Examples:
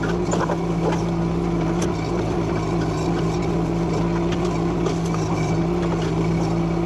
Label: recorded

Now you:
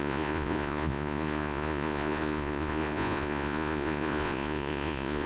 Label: remade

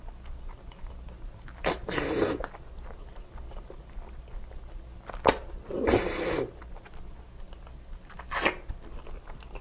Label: recorded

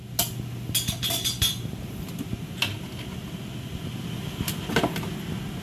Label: recorded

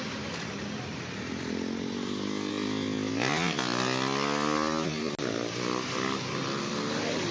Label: recorded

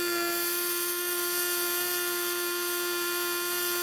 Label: recorded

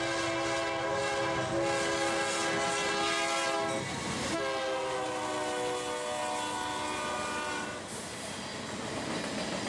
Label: recorded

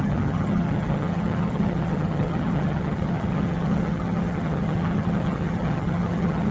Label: remade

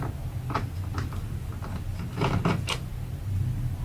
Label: recorded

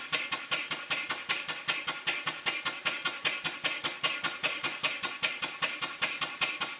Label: recorded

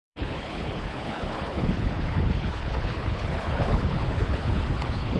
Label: remade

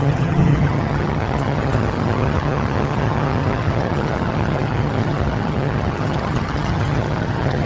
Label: remade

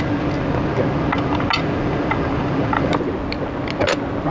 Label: recorded